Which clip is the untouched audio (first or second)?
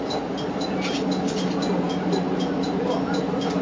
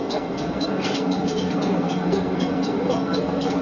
first